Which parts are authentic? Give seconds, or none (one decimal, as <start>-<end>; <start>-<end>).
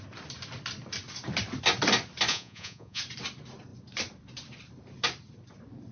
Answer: 0.0-2.3; 3.0-5.9